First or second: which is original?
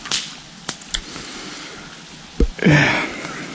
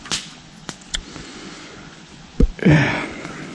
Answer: first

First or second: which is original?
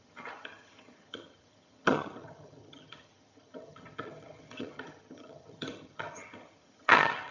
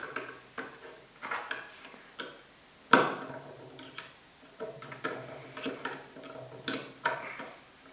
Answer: second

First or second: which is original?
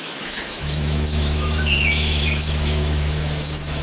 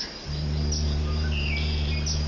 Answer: second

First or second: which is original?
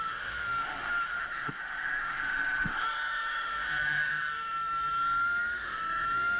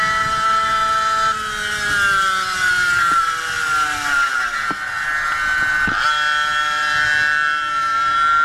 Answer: second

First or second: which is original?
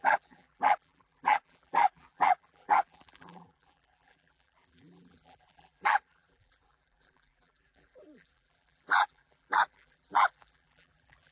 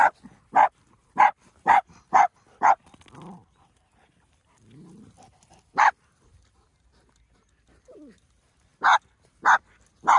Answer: second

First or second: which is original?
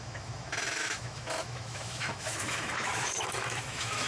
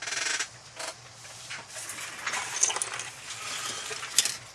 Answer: second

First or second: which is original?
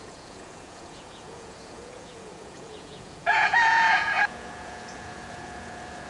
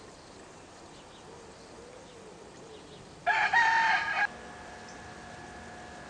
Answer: second